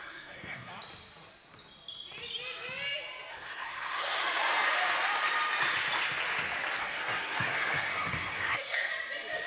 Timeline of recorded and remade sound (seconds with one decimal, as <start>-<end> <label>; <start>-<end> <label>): 0.0-0.7 remade; 0.7-3.3 recorded; 3.3-4.2 remade; 4.2-6.8 recorded; 6.8-8.9 remade; 8.9-9.5 recorded